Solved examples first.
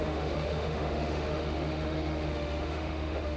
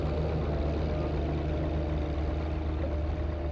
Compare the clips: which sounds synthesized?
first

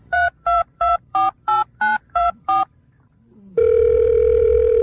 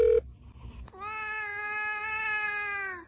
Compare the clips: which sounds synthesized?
first